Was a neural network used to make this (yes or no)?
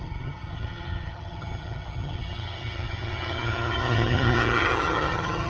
yes